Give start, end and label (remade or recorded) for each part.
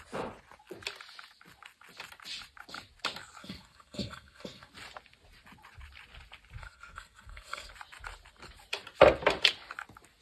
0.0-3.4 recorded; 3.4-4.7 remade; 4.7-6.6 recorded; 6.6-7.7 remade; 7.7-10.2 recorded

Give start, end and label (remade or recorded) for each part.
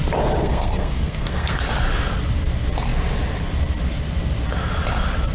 0.0-0.4 recorded; 0.4-1.6 remade; 1.6-5.3 recorded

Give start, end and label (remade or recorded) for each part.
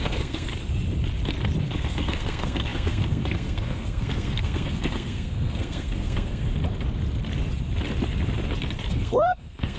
0.0-0.5 remade; 0.5-1.6 recorded; 1.6-6.5 remade; 6.5-8.9 recorded; 8.9-9.8 remade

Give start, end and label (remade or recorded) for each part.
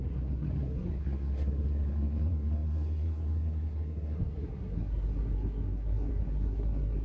0.0-7.0 remade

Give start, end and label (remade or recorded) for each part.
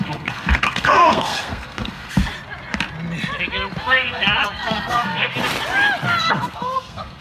0.0-2.2 remade; 2.2-3.8 recorded; 3.8-5.3 remade; 5.3-6.2 recorded; 6.2-7.2 remade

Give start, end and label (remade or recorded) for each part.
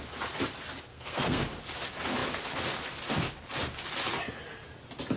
0.0-0.9 recorded; 0.9-1.4 remade; 1.4-5.2 recorded